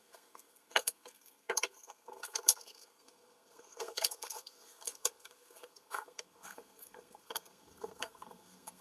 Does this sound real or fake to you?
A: fake